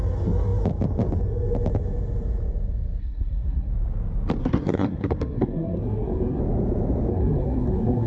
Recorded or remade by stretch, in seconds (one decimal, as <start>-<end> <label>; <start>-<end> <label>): 0.0-3.0 recorded; 3.0-3.7 remade; 3.7-4.4 recorded; 4.4-6.4 remade; 6.4-7.1 recorded; 7.1-8.1 remade